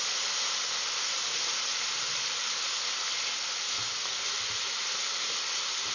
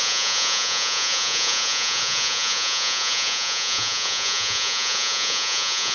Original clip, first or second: first